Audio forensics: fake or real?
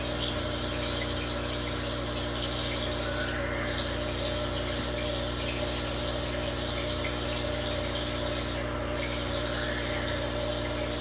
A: real